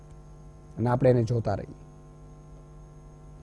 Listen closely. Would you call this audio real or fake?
real